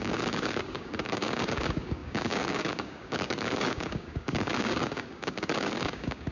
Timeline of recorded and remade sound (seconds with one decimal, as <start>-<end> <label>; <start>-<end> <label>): 0.0-6.3 remade